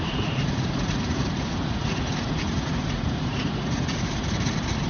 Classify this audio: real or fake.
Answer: fake